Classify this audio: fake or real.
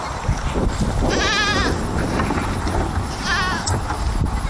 fake